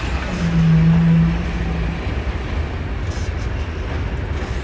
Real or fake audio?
real